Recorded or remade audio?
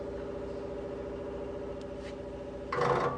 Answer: recorded